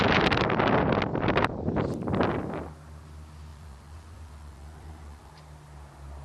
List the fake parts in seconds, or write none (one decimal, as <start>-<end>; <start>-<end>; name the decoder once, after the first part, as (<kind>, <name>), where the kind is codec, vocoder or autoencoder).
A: 3.5-5.3 (vocoder, Vocos)